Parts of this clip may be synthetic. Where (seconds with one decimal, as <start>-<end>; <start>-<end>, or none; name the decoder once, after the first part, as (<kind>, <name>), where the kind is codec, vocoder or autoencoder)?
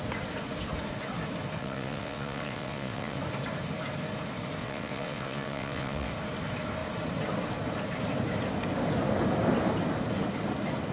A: 1.6-3.2 (vocoder, WaveNeXt); 4.6-6.1